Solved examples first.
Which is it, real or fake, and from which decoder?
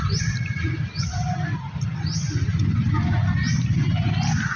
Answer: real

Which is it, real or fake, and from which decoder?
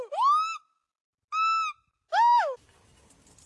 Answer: real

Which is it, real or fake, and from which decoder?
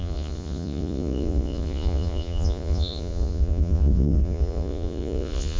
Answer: fake, vocoder, Vocos